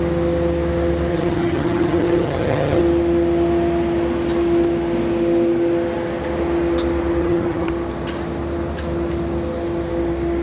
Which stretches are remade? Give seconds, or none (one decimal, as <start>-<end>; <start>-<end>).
1.1-2.8; 7.2-7.7